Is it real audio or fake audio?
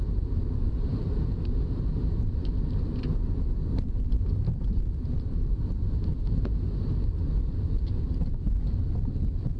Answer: fake